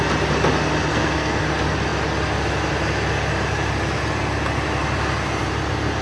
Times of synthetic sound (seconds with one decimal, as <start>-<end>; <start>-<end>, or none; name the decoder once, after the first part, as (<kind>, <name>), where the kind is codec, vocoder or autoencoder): 0.9-1.4 (codec, SNAC)